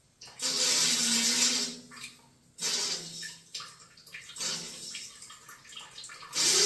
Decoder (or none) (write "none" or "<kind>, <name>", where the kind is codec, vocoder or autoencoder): none